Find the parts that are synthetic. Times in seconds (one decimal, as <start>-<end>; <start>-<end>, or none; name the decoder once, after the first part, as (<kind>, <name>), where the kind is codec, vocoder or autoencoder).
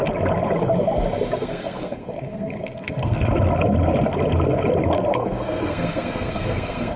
1.4-3.2 (codec, SNAC); 5.2-7.0